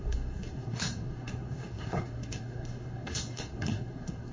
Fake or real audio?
fake